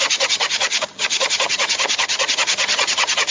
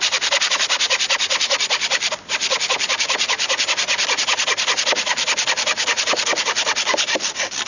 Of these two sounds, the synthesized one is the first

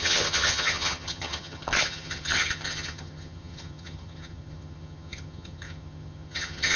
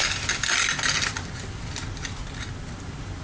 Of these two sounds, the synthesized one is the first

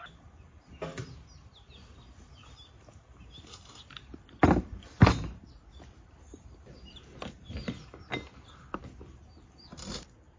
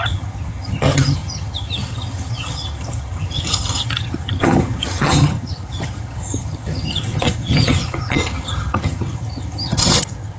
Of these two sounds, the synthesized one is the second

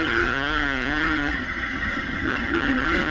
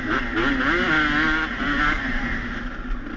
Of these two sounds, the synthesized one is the first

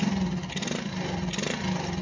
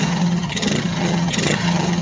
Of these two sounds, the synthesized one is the second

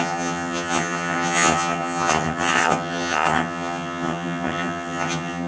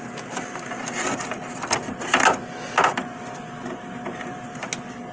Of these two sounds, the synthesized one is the first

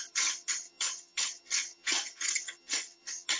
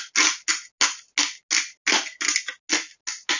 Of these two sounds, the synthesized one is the first